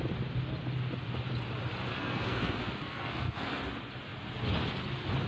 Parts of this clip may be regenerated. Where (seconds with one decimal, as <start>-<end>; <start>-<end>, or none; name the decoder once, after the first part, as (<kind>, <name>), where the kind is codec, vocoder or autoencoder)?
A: 1.9-3.6 (codec, SNAC)